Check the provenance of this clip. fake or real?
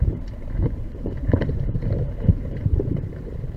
fake